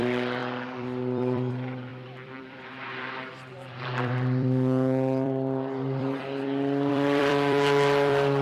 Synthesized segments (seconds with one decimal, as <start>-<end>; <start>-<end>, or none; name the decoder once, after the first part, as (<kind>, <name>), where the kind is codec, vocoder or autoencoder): 0.0-8.4 (vocoder, BigVGAN v2)